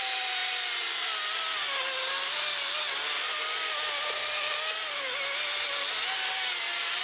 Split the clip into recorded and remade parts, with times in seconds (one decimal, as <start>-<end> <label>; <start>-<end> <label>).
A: 0.0-7.0 recorded